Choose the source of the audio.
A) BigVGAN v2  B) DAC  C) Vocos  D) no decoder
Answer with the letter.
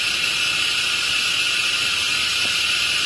D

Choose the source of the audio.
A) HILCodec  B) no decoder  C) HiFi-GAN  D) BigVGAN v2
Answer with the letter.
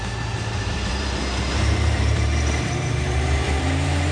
D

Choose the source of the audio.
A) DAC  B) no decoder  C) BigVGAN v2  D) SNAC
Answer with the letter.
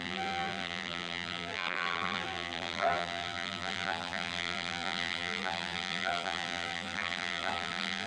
C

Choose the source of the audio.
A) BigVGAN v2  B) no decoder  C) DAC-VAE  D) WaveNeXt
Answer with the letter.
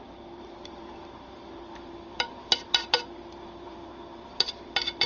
A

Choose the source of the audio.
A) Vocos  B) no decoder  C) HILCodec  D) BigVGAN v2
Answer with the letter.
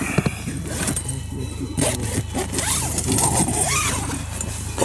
B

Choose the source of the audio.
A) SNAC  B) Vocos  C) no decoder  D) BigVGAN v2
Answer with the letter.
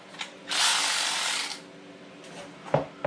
C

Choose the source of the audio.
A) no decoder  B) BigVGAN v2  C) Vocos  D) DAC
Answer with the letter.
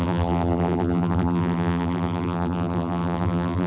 B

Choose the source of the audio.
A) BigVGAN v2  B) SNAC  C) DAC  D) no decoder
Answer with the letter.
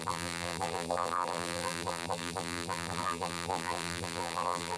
A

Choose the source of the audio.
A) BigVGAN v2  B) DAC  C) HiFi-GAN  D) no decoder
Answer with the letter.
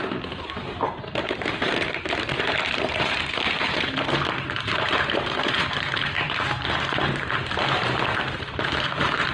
A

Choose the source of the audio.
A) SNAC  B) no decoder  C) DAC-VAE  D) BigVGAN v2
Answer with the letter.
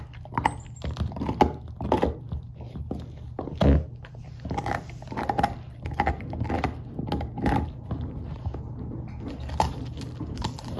B